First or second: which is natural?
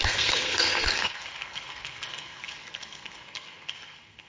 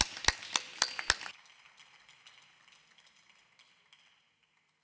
second